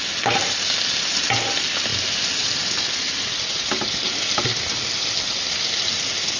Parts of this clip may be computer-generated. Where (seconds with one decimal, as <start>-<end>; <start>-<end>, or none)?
none